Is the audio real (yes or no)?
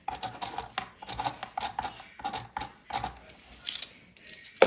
yes